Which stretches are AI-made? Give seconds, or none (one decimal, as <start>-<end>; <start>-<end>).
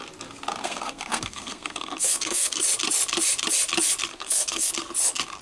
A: 0.6-2.6; 4.1-4.7